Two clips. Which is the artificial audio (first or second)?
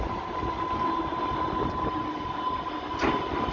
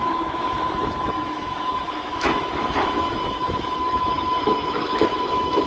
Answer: second